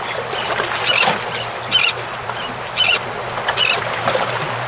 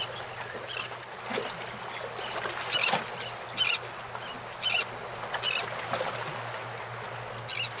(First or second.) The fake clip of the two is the first